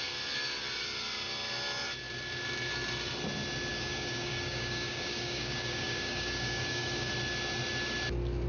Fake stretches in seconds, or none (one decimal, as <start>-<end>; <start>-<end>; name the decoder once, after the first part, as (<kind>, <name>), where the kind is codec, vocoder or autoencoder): 3.7-7.1 (codec, DAC)